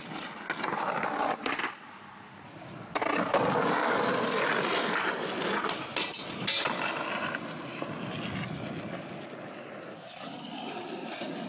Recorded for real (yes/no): yes